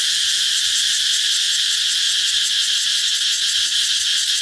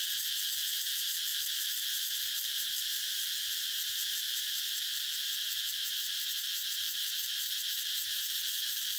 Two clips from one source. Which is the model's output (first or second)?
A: second